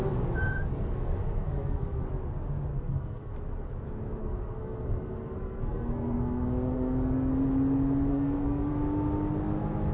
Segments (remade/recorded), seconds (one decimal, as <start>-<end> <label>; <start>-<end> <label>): 0.0-0.7 recorded; 0.7-2.1 remade; 2.1-2.7 recorded; 2.7-3.3 remade; 3.3-4.2 recorded; 4.2-7.3 remade; 7.3-8.1 recorded; 8.1-8.7 remade; 8.7-9.9 recorded